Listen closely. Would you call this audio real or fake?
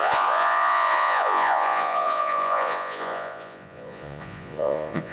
fake